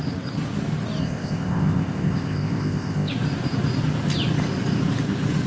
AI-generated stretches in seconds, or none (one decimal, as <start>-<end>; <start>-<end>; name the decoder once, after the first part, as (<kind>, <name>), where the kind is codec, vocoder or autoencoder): 1.0-3.1 (codec, ZipCodec)